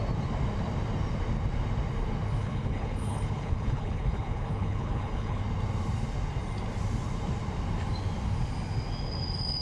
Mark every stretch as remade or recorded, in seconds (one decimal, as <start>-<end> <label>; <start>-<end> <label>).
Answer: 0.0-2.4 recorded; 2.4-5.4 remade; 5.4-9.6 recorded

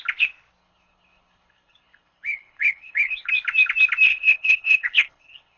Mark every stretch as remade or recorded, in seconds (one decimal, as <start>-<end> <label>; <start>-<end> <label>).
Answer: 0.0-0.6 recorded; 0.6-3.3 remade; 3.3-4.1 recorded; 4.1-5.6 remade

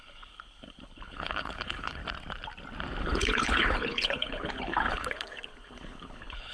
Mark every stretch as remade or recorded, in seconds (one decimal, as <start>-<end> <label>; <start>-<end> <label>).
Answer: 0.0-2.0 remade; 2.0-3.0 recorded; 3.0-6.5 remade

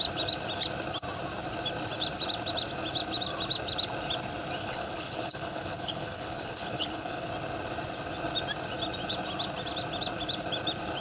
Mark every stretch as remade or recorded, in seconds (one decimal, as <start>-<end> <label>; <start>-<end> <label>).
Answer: 0.0-4.6 recorded; 4.6-7.3 remade; 7.3-11.0 recorded